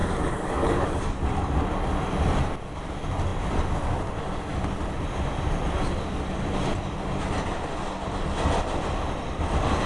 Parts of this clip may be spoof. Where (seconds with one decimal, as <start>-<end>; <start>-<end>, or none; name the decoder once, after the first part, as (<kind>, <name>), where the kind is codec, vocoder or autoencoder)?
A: 0.0-1.3 (codec, DAC)